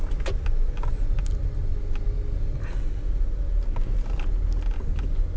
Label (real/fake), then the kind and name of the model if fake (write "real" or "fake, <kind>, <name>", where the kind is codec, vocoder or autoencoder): real